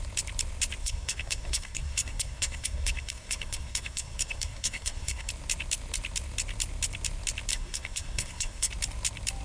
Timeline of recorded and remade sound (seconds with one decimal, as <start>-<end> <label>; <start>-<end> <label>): 0.0-0.8 recorded; 0.8-5.3 remade; 5.3-7.5 recorded; 7.5-8.7 remade; 8.7-9.4 recorded